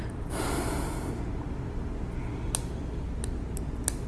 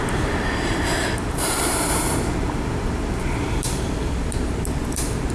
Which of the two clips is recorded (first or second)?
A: first